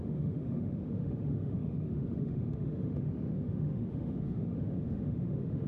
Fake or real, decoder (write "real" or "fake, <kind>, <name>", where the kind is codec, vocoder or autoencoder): fake, autoencoder, DAC-VAE